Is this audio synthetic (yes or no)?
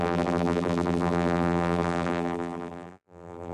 yes